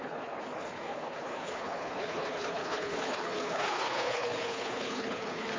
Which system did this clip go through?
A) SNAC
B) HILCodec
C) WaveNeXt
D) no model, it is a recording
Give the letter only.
B